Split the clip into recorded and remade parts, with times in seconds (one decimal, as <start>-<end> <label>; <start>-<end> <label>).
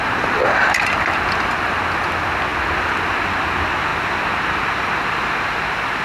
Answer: 0.0-6.0 recorded